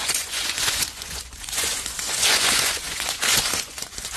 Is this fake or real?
fake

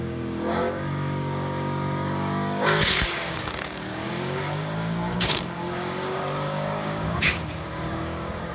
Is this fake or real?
fake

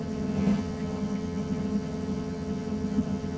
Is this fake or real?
fake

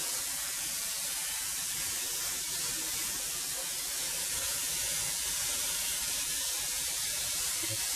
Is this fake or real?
real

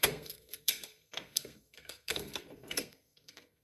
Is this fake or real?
fake